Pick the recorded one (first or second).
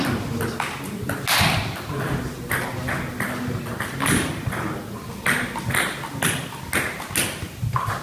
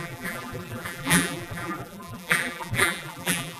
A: first